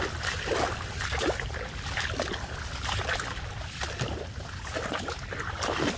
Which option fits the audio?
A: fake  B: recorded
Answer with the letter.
A